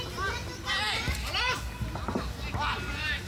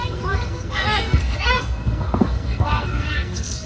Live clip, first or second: first